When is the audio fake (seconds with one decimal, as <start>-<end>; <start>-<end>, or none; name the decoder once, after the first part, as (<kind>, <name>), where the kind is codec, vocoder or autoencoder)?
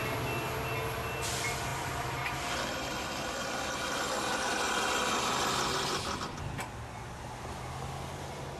none